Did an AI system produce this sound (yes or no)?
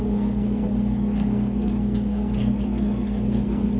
yes